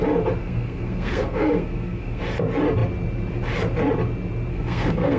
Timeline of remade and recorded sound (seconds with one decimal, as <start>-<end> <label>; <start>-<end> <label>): 0.0-0.4 recorded; 0.4-2.2 remade; 2.2-4.5 recorded; 4.5-5.2 remade